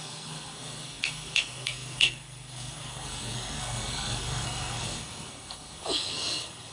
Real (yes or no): no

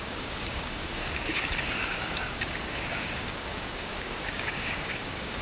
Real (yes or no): no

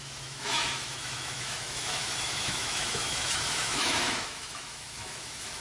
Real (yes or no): no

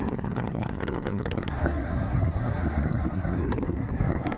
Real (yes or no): no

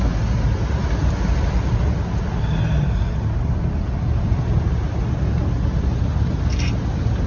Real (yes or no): yes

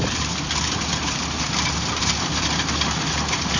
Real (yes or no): no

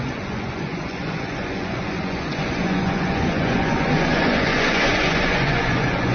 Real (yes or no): no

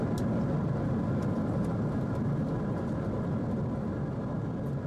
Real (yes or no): no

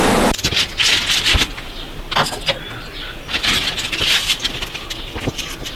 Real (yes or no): yes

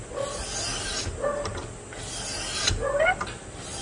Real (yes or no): yes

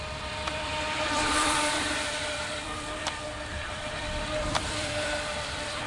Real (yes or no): no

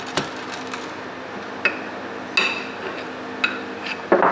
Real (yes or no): yes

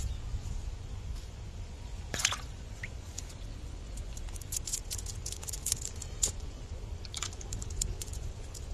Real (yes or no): no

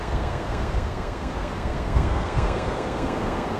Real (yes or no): no